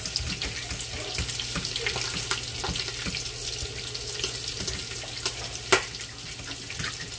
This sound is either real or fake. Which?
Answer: real